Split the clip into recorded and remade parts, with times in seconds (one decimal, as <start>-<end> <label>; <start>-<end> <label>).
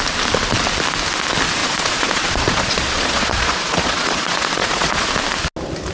0.0-1.6 recorded; 1.6-5.1 remade; 5.1-5.9 recorded